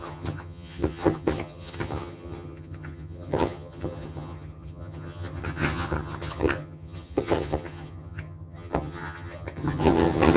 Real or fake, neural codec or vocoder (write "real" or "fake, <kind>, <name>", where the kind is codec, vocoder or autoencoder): fake, vocoder, HiFi-GAN